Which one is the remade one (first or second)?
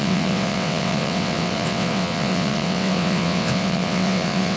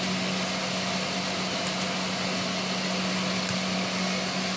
first